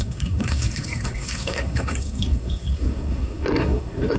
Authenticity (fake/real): fake